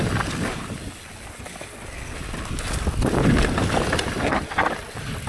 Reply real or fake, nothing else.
real